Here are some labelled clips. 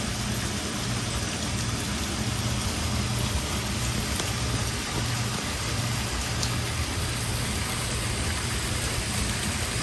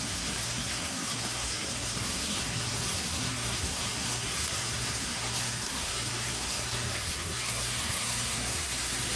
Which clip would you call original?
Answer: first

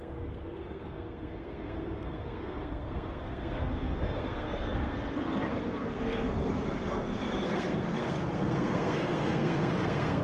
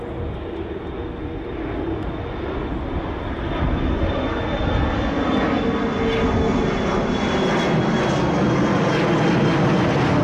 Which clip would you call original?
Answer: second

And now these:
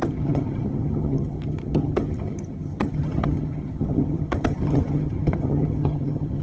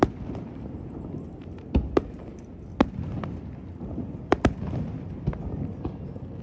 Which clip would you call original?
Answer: second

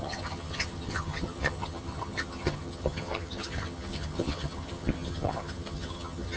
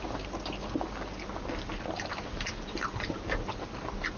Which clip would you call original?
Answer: second